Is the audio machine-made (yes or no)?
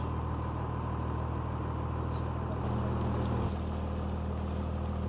no